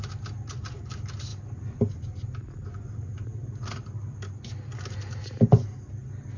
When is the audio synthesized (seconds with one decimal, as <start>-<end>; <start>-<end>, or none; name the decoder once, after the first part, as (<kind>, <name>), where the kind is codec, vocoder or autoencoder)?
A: none